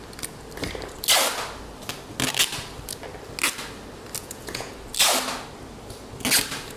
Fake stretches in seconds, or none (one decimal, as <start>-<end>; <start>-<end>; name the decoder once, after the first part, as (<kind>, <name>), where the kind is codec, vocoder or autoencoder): 4.2-4.7 (vocoder, Vocos)